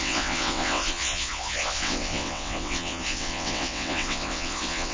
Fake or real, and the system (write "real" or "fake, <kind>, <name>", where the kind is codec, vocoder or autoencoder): fake, vocoder, WaveNeXt